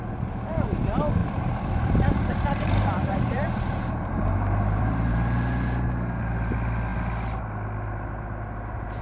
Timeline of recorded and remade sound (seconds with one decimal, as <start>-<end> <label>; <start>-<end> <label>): 0.0-1.2 recorded; 1.2-5.1 remade; 5.1-9.0 recorded